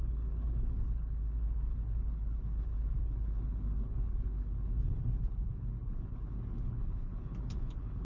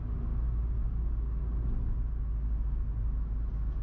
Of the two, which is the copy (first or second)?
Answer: first